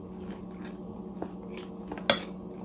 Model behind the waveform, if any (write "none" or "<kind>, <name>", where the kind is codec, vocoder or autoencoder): none